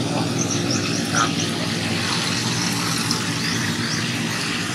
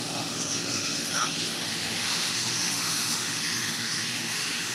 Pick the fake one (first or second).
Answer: second